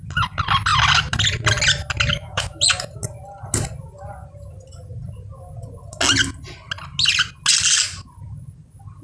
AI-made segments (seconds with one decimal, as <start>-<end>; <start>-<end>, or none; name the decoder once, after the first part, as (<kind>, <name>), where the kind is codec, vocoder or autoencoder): 2.1-2.6 (autoencoder, DAC-VAE)